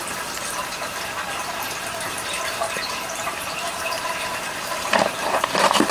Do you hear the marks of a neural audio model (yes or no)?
yes